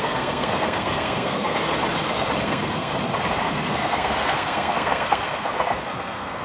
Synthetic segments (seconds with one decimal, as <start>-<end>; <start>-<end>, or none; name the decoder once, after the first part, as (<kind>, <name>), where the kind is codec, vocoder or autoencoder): 0.0-1.7 (codec, SNAC); 2.4-2.9; 3.4-6.4